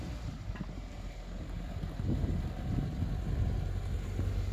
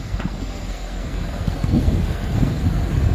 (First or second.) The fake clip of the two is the second